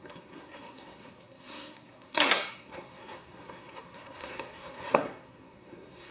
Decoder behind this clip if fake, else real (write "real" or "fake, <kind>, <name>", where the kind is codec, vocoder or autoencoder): fake, codec, SNAC